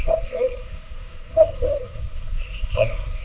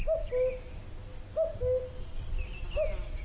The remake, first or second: first